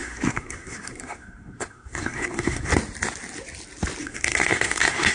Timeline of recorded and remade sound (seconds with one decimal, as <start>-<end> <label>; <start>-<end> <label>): 0.0-2.7 remade; 2.7-4.0 recorded; 4.0-5.1 remade

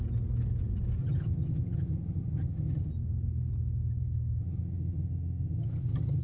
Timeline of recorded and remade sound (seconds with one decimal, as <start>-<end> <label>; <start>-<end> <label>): 0.0-1.0 recorded; 1.0-2.9 remade; 2.9-4.4 recorded; 4.4-6.2 remade

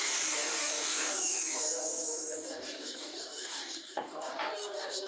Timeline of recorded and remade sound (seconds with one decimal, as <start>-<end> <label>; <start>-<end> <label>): 0.0-5.1 remade

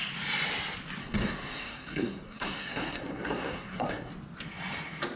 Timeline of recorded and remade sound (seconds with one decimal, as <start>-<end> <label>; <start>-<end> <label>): 0.0-1.0 recorded; 1.0-4.1 remade; 4.1-5.2 recorded

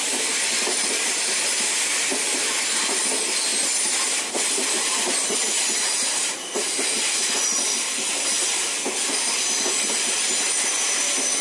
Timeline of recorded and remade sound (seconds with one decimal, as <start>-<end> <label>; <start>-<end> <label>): 0.0-11.4 recorded